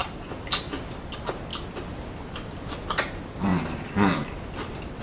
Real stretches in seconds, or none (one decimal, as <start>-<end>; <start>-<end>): 0.0-5.0